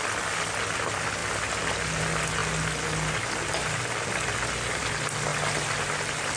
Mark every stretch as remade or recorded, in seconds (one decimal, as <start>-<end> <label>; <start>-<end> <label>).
0.0-6.4 recorded